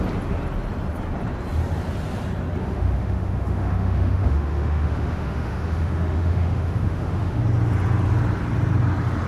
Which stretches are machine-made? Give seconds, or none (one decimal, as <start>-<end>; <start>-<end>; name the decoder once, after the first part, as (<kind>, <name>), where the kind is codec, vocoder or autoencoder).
2.6-7.4 (autoencoder, DAC-VAE)